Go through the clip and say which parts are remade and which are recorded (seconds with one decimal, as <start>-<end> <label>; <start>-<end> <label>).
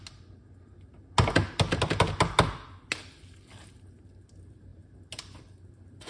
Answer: 0.0-6.1 recorded